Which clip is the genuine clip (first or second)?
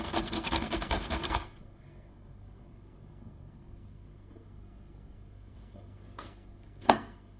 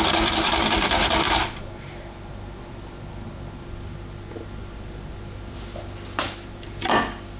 second